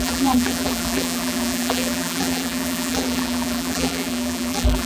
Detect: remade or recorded remade